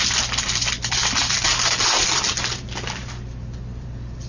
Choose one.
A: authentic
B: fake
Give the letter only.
B